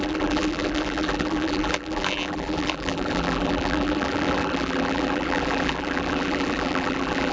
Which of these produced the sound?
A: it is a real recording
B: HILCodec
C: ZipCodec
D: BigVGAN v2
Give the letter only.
D